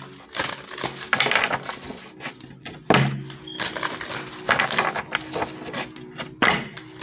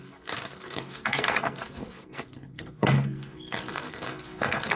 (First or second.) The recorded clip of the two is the first